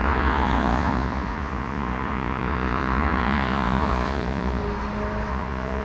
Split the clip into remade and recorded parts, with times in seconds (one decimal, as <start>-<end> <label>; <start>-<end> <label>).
0.0-4.6 remade; 4.6-5.3 recorded; 5.3-5.8 remade